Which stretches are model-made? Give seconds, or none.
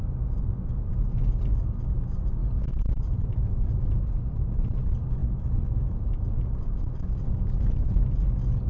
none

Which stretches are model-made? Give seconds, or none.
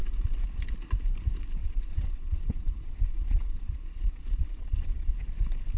1.6-5.1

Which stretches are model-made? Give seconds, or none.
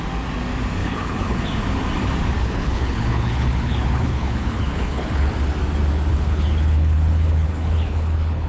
0.8-1.4; 2.4-5.3; 6.1-8.5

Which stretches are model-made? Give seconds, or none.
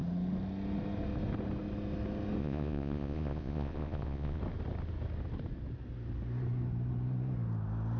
2.4-4.4